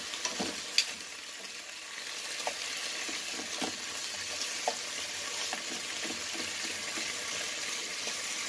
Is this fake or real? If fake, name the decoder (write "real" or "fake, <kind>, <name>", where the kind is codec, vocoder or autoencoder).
real